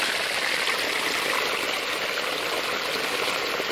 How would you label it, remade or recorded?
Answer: recorded